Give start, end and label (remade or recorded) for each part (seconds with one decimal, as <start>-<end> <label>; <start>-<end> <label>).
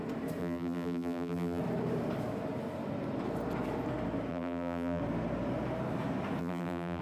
0.0-0.4 recorded; 0.4-1.6 remade; 1.6-4.3 recorded; 4.3-5.0 remade; 5.0-6.4 recorded; 6.4-7.0 remade